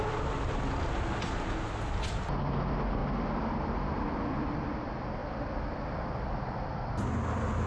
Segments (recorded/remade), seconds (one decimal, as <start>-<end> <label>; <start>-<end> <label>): 0.0-5.2 recorded; 5.2-7.1 remade; 7.1-7.7 recorded